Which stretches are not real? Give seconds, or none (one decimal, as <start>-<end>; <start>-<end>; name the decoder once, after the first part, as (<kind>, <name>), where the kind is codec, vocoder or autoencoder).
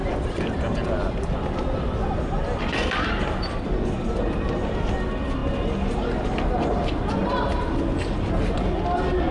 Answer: 0.0-2.0 (vocoder, BigVGAN v2); 2.6-5.4; 6.2-7.2